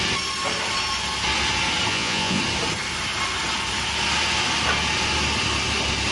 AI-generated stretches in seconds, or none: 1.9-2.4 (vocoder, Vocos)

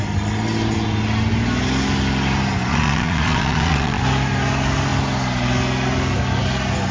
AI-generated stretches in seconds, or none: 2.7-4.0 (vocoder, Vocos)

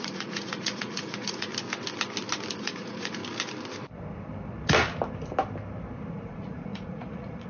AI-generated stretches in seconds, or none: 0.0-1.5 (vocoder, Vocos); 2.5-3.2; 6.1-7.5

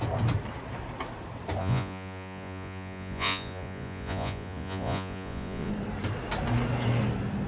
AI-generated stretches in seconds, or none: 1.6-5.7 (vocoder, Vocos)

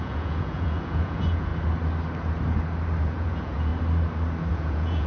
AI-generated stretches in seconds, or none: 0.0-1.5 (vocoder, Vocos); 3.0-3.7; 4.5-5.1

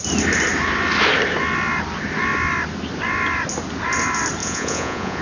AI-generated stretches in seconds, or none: 4.4-5.2 (vocoder, Vocos)

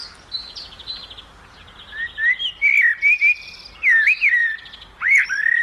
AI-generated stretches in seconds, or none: none

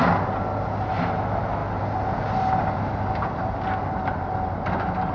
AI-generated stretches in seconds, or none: none